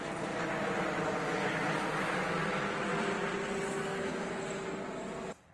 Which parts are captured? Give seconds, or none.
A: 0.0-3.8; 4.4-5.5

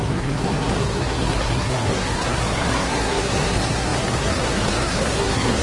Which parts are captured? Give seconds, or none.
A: none

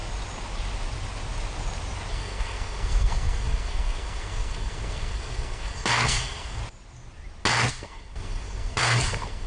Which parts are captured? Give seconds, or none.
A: 0.0-2.1; 6.6-7.7

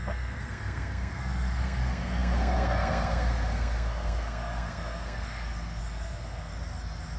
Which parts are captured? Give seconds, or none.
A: 6.5-7.2

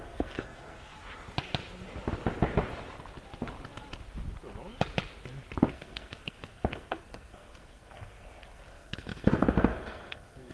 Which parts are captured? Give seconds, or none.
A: 0.9-5.7

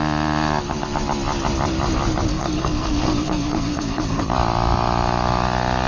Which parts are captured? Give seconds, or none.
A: 0.0-2.3; 4.2-5.9

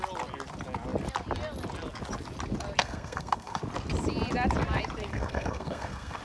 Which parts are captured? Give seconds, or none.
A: 0.0-2.8; 3.6-5.1